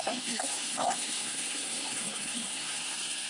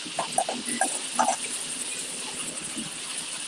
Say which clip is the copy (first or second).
first